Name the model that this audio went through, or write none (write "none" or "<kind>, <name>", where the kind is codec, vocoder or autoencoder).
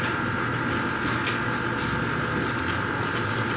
none